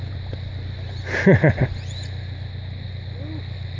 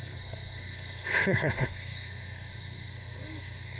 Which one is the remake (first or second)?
second